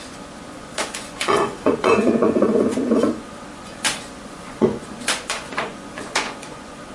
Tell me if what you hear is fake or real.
fake